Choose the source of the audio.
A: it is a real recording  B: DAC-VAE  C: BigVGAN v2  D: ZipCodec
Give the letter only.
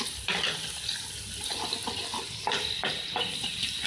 A